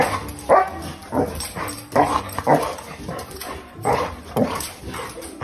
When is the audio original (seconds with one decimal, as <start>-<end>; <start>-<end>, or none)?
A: 0.0-1.0; 4.2-5.4